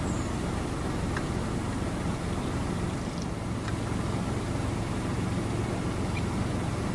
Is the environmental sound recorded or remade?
remade